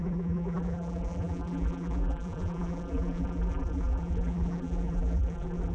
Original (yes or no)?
no